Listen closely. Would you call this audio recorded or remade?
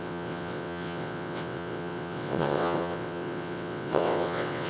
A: remade